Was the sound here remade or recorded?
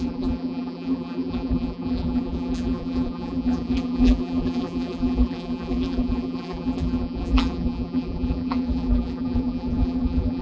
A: remade